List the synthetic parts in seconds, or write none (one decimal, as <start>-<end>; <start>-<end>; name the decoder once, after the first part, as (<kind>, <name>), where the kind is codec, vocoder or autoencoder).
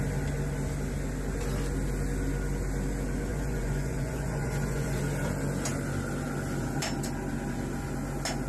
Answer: 3.3-5.0 (vocoder, Vocos)